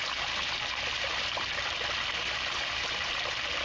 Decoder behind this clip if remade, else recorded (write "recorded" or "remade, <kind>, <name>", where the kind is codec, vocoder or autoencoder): recorded